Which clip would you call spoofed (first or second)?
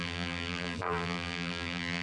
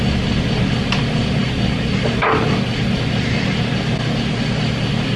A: first